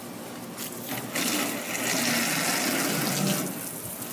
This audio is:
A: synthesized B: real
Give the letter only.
B